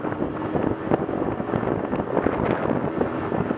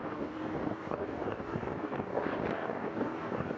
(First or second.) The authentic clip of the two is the first